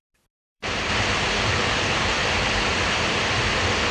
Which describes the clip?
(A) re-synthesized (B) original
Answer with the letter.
A